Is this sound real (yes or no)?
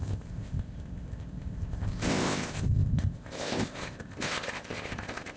no